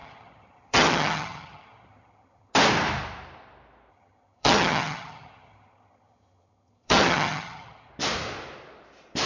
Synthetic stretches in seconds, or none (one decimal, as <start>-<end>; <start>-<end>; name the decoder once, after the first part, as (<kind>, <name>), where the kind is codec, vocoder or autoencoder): 0.0-2.5 (vocoder, HiFi-GAN); 3.9-7.9